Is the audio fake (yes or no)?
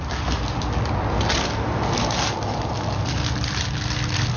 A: no